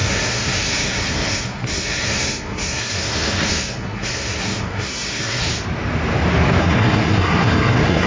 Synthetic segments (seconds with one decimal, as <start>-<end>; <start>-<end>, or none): 0.0-5.5; 6.6-8.1